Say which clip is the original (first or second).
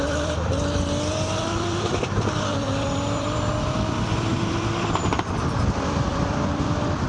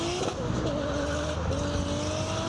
second